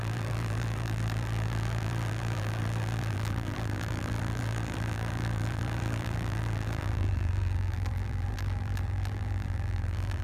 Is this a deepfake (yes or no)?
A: yes